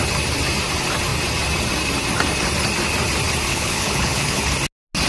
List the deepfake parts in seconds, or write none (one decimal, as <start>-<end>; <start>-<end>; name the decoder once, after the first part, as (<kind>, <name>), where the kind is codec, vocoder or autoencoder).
3.5-4.4 (codec, HILCodec)

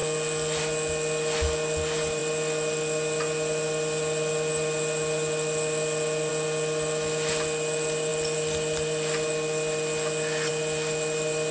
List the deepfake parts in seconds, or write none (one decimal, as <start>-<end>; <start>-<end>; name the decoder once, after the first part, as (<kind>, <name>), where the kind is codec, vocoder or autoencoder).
none